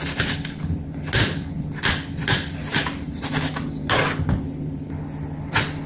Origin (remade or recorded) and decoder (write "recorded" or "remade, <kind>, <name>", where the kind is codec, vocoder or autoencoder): recorded